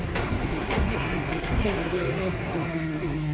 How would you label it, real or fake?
fake